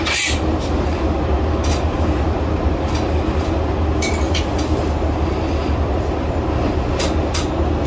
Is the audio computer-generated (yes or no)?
no